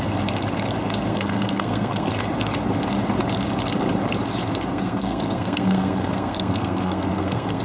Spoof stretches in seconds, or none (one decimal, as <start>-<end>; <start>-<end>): 1.1-2.1; 4.7-7.6

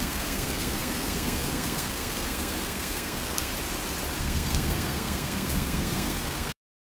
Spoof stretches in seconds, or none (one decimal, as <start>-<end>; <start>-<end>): 0.0-3.5; 4.2-6.8

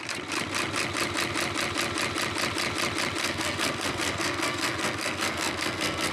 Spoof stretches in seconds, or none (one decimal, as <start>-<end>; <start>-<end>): 3.2-6.1

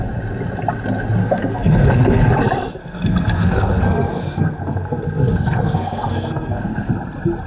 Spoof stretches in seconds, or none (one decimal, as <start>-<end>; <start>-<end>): 1.2-2.3; 2.8-6.9

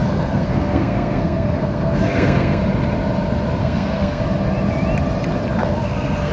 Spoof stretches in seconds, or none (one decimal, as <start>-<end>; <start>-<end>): 0.0-2.6; 3.6-4.2; 5.6-6.3